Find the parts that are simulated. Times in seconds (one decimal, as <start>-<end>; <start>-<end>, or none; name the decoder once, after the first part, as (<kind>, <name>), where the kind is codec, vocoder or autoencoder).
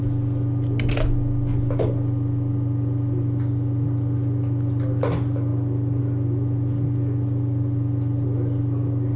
none